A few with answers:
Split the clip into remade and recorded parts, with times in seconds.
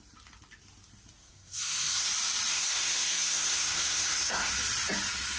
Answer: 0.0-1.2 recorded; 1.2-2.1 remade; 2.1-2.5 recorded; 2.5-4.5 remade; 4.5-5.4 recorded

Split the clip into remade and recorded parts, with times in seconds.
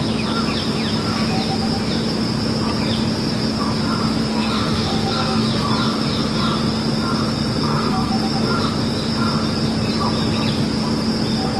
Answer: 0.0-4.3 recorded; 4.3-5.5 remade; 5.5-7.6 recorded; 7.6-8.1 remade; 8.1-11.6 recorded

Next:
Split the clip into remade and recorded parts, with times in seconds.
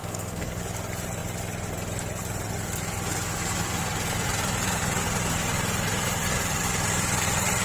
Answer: 0.0-0.6 remade; 0.6-7.6 recorded